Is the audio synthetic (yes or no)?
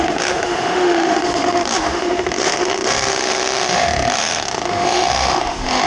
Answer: yes